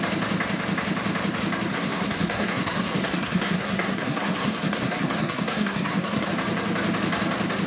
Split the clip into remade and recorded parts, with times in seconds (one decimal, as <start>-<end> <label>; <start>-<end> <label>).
0.0-1.7 recorded; 1.7-6.3 remade; 6.3-7.7 recorded